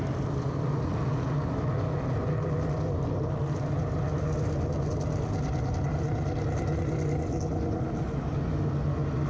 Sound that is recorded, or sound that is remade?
recorded